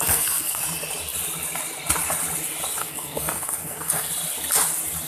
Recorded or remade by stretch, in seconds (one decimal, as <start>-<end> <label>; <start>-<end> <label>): 0.0-0.6 remade; 0.6-2.8 recorded; 2.8-4.1 remade; 4.1-5.1 recorded